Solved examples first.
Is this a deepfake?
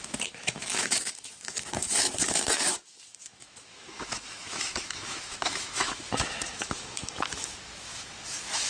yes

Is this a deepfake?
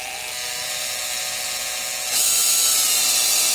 no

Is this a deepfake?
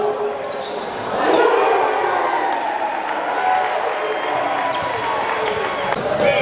no